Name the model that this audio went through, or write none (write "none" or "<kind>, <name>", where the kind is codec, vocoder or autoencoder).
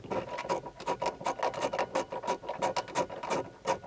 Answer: none